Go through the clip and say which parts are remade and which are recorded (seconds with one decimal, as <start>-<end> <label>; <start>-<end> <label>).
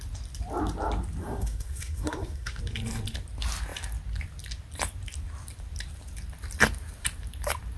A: 0.0-1.2 recorded; 1.2-2.6 remade; 2.6-7.8 recorded